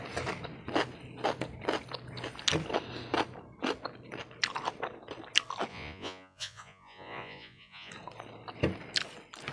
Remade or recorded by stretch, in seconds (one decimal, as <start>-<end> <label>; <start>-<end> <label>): 0.0-5.7 recorded; 5.7-7.9 remade; 7.9-9.5 recorded